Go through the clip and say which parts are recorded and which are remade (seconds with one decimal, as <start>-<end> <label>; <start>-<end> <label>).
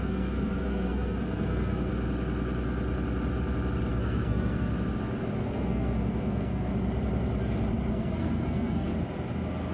0.0-1.9 remade; 1.9-3.9 recorded; 3.9-4.7 remade; 4.7-5.4 recorded; 5.4-6.7 remade; 6.7-7.9 recorded; 7.9-8.9 remade; 8.9-9.7 recorded